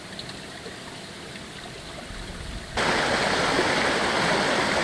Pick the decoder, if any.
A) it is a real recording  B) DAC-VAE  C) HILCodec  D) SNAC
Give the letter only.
A